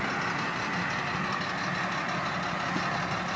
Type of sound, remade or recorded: recorded